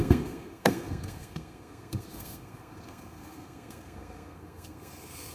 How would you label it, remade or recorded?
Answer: remade